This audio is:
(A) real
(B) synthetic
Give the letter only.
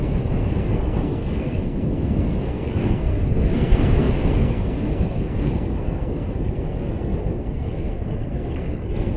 B